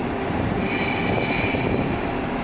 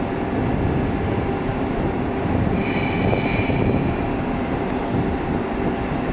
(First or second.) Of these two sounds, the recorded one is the second